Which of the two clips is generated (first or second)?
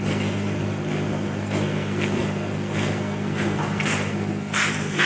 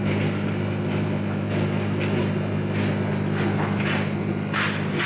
first